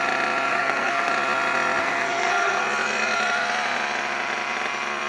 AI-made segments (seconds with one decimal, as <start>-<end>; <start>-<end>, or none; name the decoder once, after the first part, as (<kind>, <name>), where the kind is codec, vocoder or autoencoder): 0.5-1.1 (codec, SNAC); 1.8-2.6